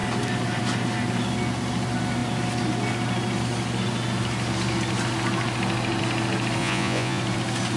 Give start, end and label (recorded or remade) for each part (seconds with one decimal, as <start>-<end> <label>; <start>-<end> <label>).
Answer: 0.0-6.6 recorded; 6.6-7.2 remade; 7.2-7.8 recorded